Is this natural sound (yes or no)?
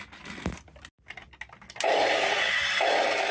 yes